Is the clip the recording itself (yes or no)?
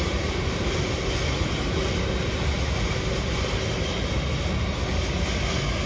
yes